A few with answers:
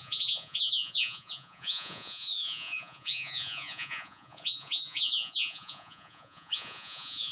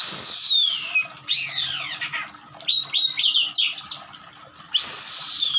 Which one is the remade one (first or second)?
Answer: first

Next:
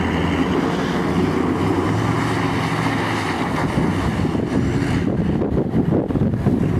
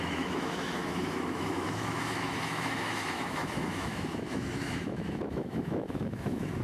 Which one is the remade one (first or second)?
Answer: second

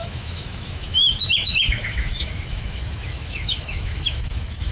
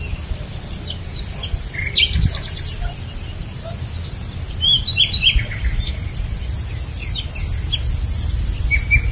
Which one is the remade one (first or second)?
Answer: first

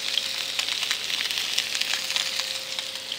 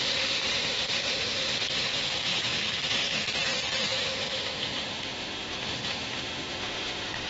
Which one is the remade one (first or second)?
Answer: second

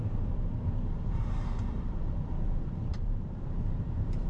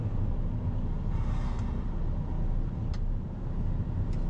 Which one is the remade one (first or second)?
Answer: first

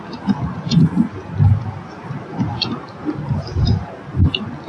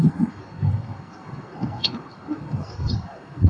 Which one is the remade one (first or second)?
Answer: second